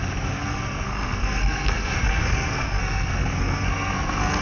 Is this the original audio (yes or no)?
no